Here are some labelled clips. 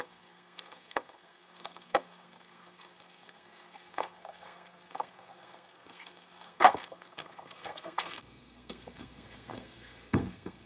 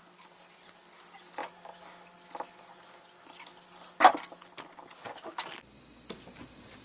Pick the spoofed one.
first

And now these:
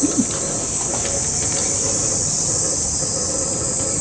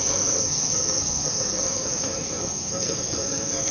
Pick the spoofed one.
second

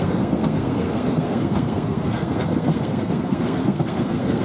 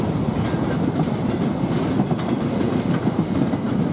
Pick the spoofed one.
first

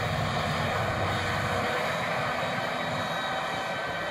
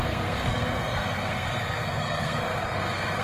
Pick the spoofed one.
second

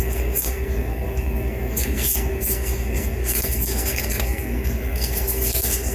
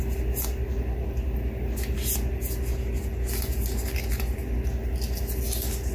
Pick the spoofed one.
first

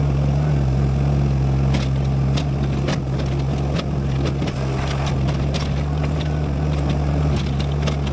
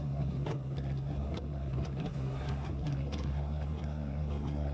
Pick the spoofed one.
second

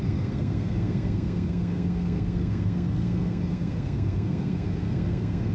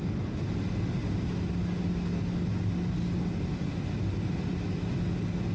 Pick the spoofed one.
first